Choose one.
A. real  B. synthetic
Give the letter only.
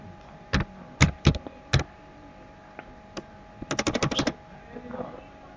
A